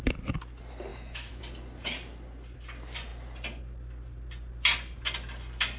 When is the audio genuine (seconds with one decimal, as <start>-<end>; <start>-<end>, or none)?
0.0-0.9; 1.4-5.8